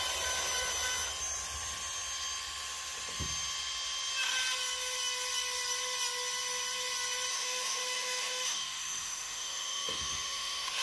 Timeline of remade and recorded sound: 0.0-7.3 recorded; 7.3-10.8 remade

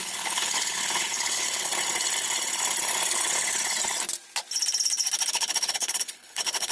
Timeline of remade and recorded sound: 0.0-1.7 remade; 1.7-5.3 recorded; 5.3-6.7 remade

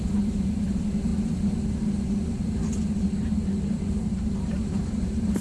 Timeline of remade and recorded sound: 0.0-1.1 remade; 1.1-2.3 recorded; 2.3-5.4 remade